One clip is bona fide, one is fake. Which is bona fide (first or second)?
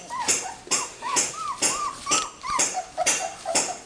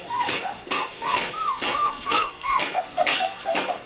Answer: first